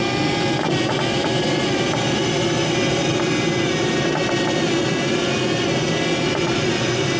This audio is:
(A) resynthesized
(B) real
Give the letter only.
B